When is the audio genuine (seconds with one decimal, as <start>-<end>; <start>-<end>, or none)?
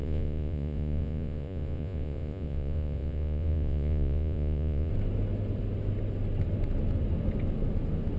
4.9-8.2